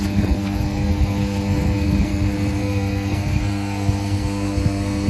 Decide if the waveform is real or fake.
fake